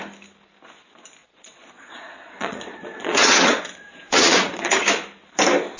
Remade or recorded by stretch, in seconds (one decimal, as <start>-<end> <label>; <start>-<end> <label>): 0.0-1.2 recorded; 1.2-4.7 remade; 4.7-5.8 recorded